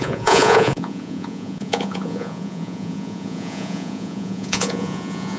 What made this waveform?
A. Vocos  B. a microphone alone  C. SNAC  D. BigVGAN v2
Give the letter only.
A